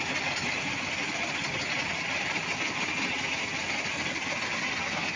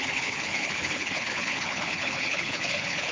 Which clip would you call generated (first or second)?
second